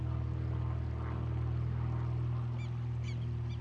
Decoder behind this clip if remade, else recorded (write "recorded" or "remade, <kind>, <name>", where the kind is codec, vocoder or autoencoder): recorded